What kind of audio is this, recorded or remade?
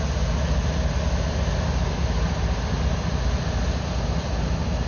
recorded